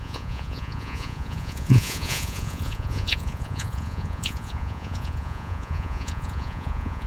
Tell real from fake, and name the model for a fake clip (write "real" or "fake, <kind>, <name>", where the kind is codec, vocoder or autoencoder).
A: fake, vocoder, Vocos